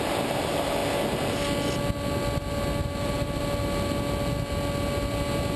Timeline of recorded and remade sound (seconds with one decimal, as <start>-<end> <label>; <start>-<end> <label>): 0.0-2.8 recorded; 2.8-3.4 remade; 3.4-5.6 recorded